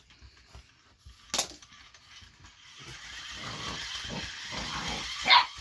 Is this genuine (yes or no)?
yes